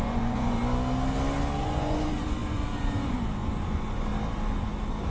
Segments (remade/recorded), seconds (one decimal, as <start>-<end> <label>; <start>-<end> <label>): 0.0-0.6 remade; 0.6-1.6 recorded; 1.6-4.1 remade; 4.1-5.1 recorded